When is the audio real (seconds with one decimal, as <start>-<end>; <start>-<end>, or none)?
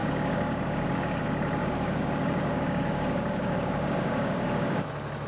1.2-1.6; 4.8-5.3